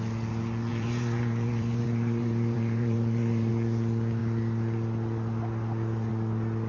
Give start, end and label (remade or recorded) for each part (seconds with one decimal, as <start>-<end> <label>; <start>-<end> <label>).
0.0-0.7 recorded; 0.7-3.5 remade; 3.5-6.7 recorded